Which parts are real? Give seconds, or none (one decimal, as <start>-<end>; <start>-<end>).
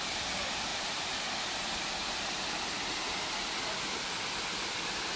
0.0-5.2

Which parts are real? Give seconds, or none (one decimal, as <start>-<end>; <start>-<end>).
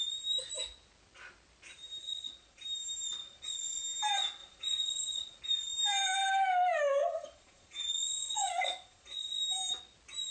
0.0-2.0; 2.6-3.2; 3.8-4.4; 5.4-7.0; 9.4-10.3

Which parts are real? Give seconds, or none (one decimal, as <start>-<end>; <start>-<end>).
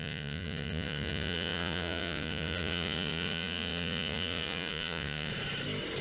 5.3-6.0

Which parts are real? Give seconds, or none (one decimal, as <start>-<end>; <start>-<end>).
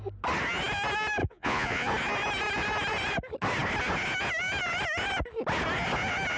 0.0-1.2; 1.9-6.4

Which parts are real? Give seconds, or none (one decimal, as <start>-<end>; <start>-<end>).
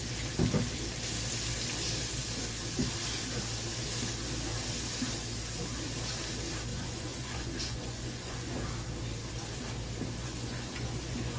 0.0-6.7; 8.6-10.2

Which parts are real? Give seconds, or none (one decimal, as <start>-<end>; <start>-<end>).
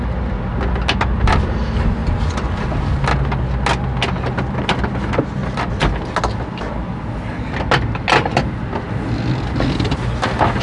0.0-10.6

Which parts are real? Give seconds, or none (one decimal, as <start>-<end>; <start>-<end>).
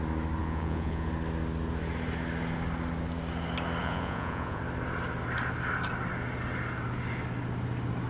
0.0-0.4; 1.1-3.8; 4.6-8.1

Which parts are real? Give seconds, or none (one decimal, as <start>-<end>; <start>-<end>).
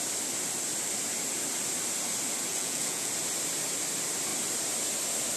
0.0-2.5; 3.1-5.4